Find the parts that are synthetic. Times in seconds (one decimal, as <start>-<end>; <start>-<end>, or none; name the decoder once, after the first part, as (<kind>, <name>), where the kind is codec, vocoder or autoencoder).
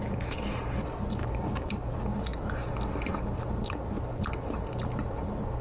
1.2-1.7 (codec, DAC)